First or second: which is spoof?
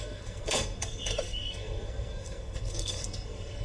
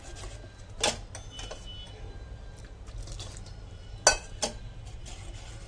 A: first